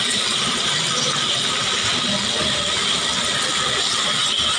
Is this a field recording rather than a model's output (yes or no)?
yes